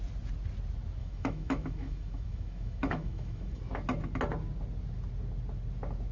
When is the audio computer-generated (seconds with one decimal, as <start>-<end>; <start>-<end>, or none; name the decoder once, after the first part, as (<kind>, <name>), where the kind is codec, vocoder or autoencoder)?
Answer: 1.0-3.6 (autoencoder, DAC-VAE)